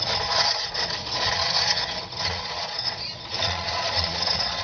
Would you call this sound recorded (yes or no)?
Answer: no